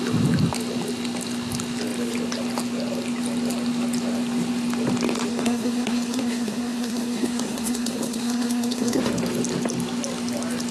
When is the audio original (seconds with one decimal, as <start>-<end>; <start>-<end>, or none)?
0.0-5.3; 9.0-10.7